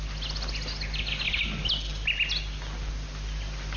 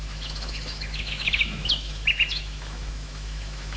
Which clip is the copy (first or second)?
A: second